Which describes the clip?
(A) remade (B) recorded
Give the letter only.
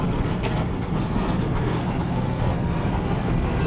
A